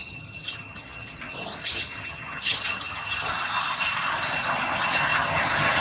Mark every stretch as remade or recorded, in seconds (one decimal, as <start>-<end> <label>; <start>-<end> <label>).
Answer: 0.0-1.2 remade; 1.2-1.6 recorded; 1.6-3.3 remade; 3.3-5.1 recorded; 5.1-5.8 remade